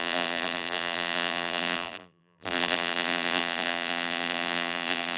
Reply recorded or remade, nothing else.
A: remade